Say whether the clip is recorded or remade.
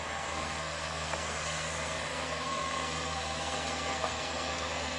remade